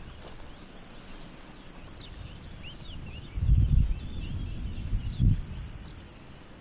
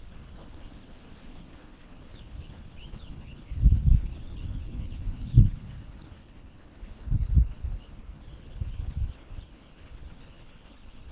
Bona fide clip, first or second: first